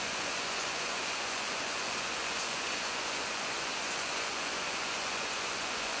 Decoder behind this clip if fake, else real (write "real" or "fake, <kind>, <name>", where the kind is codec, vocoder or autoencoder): fake, vocoder, Vocos